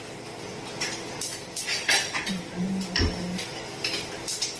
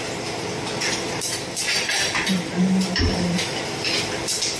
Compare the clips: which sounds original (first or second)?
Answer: first